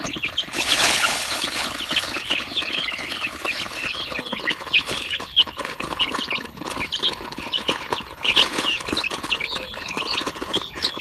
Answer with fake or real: fake